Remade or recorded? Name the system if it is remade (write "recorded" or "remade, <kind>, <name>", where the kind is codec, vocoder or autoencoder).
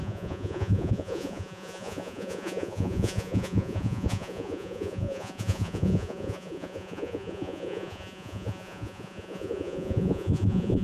remade, vocoder, Vocos